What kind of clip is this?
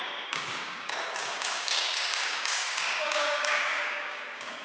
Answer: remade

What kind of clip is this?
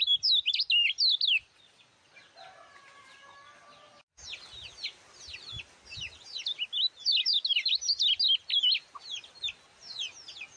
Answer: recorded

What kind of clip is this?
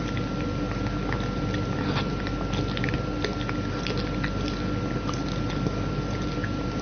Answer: recorded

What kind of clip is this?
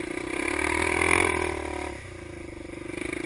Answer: recorded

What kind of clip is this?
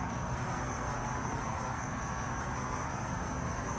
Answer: remade